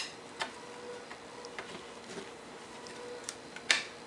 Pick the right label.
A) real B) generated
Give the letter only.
A